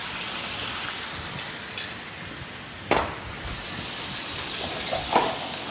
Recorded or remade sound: recorded